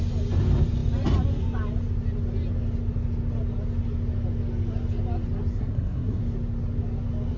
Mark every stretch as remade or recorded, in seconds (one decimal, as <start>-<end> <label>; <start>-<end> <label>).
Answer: 0.0-5.5 recorded; 5.5-6.2 remade; 6.2-7.4 recorded